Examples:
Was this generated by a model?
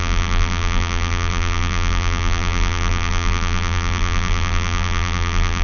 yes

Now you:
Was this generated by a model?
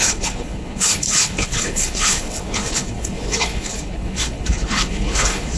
yes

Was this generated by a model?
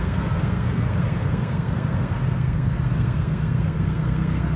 yes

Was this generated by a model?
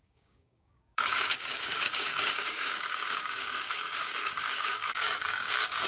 yes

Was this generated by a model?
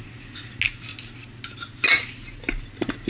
no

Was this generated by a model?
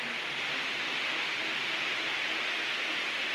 no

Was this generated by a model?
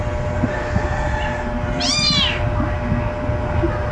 no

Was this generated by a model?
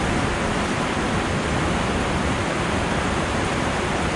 no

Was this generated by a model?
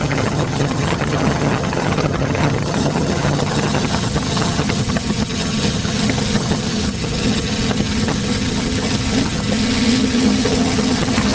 yes